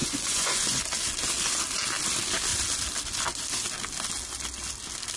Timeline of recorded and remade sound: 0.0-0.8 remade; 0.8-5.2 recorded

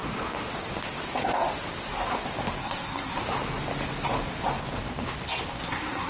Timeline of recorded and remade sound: 0.0-2.6 recorded; 2.6-3.2 remade; 3.2-5.5 recorded; 5.5-6.1 remade

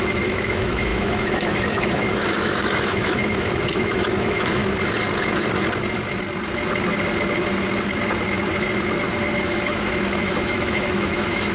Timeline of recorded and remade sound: 0.0-4.6 remade; 4.6-9.4 recorded; 9.4-11.5 remade

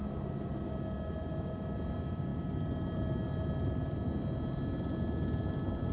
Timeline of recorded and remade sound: 0.0-5.9 recorded

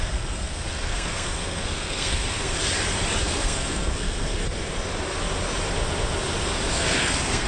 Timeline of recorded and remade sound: 0.0-2.6 remade; 2.6-3.2 recorded; 3.2-4.4 remade; 4.4-6.7 recorded; 6.7-7.5 remade

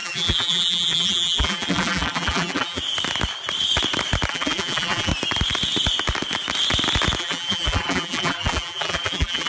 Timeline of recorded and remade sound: 0.0-2.8 remade; 2.8-4.3 recorded; 4.3-5.1 remade; 5.1-7.2 recorded; 7.2-9.5 remade